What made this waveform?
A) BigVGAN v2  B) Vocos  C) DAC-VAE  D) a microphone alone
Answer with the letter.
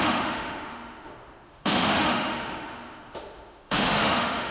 C